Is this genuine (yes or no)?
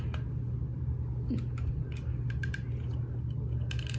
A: yes